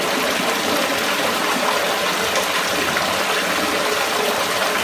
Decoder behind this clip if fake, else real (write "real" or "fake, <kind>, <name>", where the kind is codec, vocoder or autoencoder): real